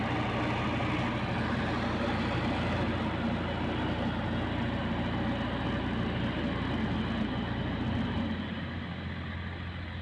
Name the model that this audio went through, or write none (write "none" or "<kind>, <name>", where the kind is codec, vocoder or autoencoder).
none